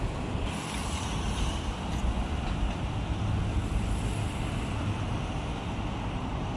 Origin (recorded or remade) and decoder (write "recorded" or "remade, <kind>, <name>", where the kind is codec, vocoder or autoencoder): recorded